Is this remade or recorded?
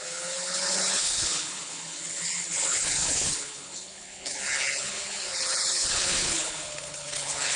remade